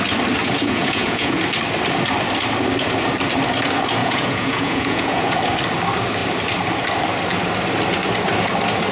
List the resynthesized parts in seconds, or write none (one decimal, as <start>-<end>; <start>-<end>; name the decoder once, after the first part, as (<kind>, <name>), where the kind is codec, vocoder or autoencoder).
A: 0.4-1.4 (vocoder, Vocos); 4.0-5.4